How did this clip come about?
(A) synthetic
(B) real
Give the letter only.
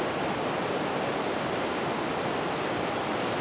B